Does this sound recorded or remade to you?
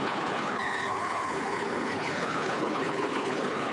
remade